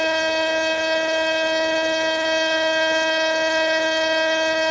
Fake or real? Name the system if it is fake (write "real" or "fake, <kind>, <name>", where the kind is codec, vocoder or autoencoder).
fake, codec, HILCodec